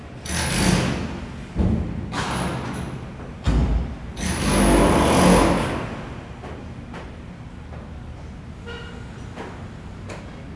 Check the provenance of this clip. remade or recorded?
recorded